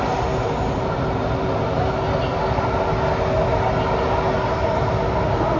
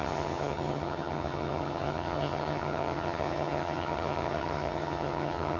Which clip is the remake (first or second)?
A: second